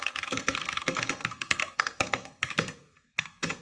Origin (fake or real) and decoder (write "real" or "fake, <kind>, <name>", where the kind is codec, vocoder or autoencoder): fake, codec, SNAC